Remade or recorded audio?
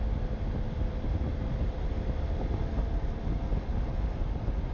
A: recorded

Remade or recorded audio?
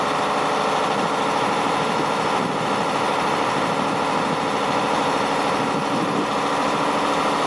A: recorded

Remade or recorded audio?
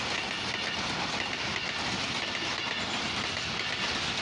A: recorded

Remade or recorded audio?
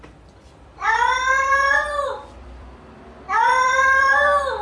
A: remade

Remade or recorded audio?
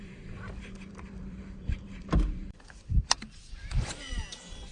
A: remade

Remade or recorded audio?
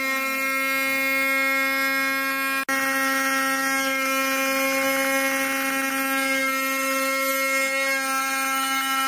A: recorded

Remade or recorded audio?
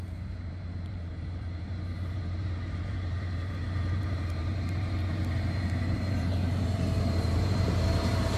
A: remade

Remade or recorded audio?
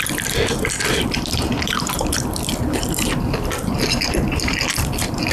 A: remade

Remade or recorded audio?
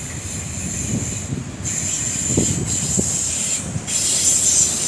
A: recorded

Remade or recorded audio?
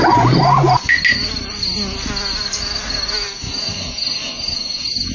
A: recorded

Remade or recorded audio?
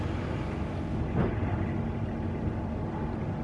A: recorded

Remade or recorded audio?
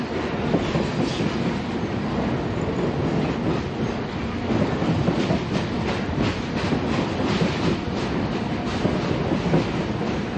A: recorded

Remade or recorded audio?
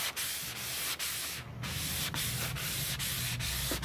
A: recorded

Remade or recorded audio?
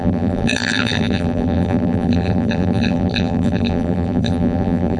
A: remade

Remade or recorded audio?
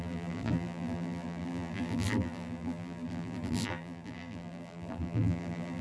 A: remade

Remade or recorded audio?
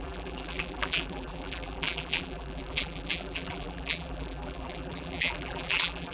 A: remade